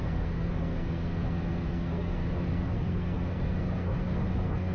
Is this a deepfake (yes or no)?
yes